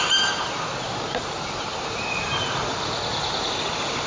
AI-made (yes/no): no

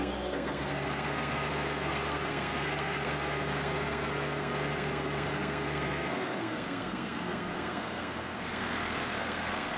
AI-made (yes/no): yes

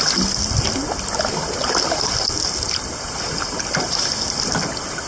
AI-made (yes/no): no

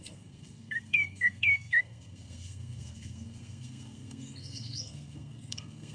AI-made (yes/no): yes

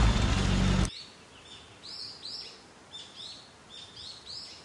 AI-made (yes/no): no